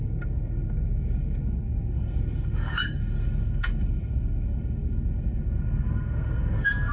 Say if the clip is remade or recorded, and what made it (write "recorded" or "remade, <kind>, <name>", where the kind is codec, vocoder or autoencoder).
remade, codec, SNAC